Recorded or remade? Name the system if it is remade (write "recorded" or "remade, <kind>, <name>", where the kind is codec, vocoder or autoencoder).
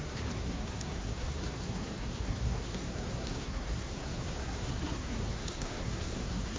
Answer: remade, codec, SNAC